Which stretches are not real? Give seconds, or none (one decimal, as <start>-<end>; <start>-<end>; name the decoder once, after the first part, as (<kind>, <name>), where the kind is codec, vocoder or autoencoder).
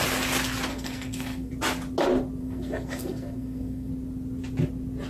0.7-1.5 (codec, SNAC); 2.4-3.9